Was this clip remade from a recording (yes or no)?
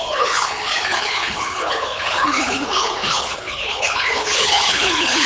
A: yes